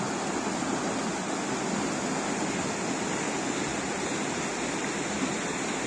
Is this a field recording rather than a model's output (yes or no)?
yes